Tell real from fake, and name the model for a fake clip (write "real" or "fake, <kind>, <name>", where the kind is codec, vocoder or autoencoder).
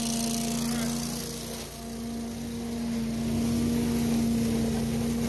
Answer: real